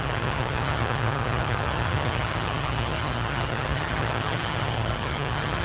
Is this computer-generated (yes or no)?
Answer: yes